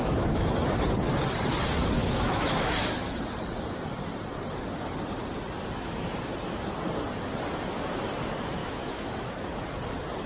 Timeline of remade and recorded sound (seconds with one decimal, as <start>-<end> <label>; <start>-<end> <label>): 0.0-0.5 remade; 0.5-2.0 recorded; 2.0-2.7 remade; 2.7-8.6 recorded; 8.6-9.3 remade; 9.3-10.3 recorded